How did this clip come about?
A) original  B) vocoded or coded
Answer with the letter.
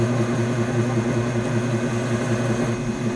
A